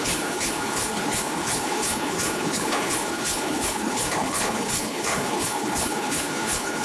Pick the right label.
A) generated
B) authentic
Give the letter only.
A